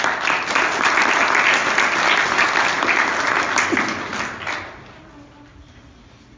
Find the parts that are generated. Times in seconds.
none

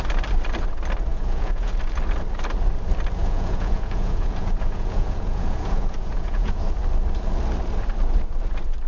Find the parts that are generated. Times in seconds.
1.1-1.8 (vocoder, Vocos); 3.2-6.6